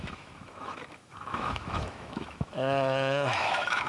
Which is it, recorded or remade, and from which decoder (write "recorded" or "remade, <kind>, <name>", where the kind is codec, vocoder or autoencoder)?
remade, autoencoder, DAC-VAE